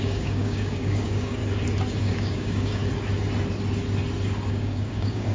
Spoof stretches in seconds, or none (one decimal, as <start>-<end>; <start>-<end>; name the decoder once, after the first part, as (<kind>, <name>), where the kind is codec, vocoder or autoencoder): 0.0-1.4 (codec, DAC); 2.0-2.8; 4.5-5.3